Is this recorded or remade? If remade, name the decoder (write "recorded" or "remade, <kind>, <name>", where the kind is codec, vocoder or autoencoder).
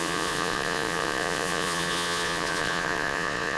remade, vocoder, Vocos